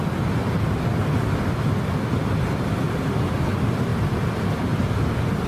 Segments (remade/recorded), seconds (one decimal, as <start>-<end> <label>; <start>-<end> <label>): 0.0-5.5 recorded